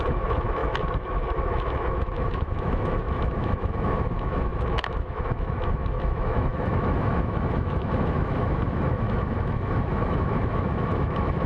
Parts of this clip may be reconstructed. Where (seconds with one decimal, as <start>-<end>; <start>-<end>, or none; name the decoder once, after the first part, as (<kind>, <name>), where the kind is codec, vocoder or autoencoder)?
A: 0.0-11.5 (autoencoder, DAC-VAE)